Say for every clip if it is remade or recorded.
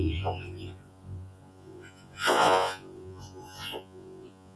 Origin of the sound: remade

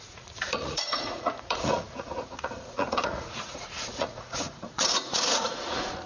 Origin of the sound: remade